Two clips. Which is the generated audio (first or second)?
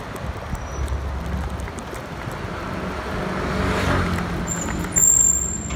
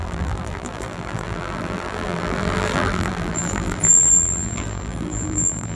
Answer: second